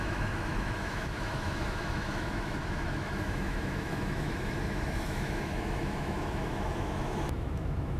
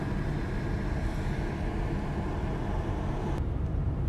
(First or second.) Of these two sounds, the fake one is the first